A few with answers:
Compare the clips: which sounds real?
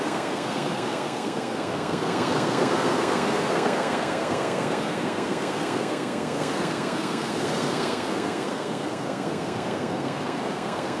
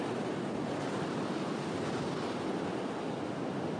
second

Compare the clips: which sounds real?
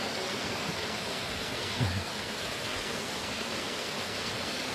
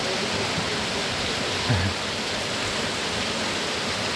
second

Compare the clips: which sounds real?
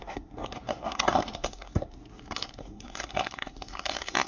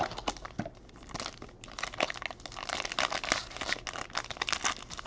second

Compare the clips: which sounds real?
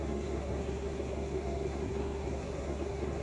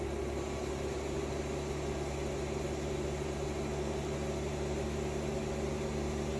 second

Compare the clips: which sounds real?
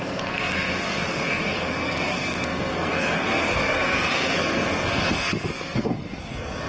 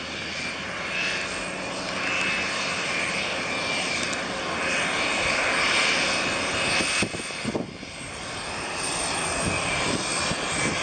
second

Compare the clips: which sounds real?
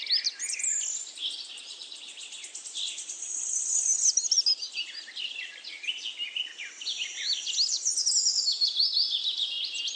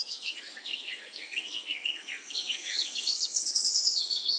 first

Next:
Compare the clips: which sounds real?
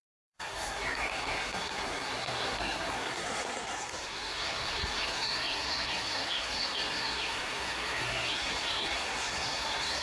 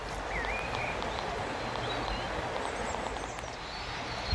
second